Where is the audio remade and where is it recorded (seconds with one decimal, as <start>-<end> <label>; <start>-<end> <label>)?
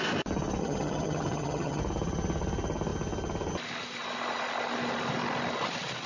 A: 0.0-0.6 recorded; 0.6-1.8 remade; 1.8-6.1 recorded